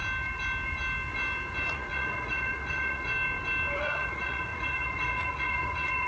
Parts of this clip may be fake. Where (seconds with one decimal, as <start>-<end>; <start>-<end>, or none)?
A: 1.7-3.1; 3.8-6.1